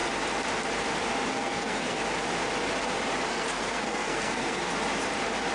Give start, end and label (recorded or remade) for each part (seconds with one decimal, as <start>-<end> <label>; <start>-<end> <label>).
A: 0.0-1.3 recorded; 1.3-2.0 remade; 2.0-3.3 recorded; 3.3-4.7 remade; 4.7-5.5 recorded